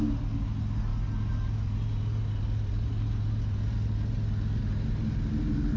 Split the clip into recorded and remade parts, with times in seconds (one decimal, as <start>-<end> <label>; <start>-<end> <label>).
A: 0.0-5.8 recorded